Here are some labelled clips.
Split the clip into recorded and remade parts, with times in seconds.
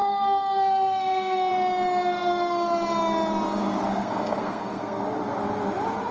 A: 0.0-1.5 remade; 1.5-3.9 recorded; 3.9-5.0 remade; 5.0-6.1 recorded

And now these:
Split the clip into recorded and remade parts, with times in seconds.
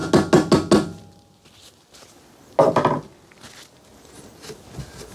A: 0.0-5.1 recorded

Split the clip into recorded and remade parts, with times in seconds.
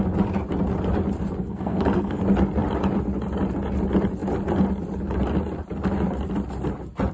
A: 0.0-1.4 recorded; 1.4-2.2 remade; 2.2-7.1 recorded